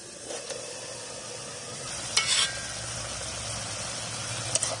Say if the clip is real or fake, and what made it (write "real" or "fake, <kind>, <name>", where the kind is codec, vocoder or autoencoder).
real